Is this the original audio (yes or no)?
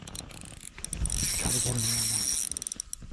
yes